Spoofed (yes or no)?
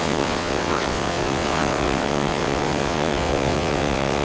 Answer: yes